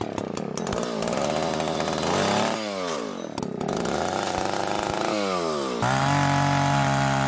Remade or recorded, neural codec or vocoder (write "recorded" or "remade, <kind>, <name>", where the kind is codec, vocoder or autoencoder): recorded